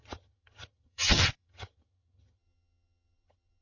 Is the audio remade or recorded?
remade